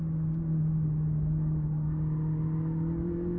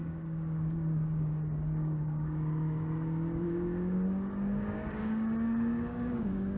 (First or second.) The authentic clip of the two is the first